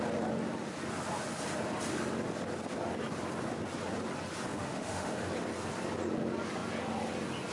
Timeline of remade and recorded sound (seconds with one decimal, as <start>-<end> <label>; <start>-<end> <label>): 0.0-4.5 recorded; 4.5-5.3 remade; 5.3-7.5 recorded